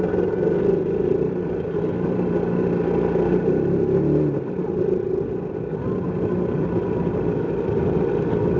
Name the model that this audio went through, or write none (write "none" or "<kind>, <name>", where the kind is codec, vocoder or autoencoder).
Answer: none